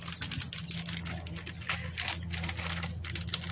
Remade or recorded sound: recorded